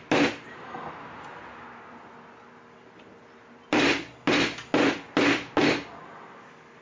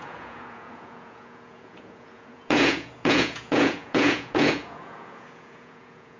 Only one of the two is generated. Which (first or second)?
second